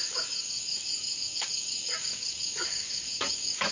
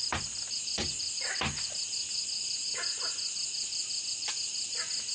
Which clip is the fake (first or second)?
first